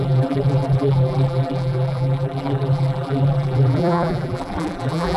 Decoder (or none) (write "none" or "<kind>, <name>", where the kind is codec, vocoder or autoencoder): vocoder, BigVGAN v2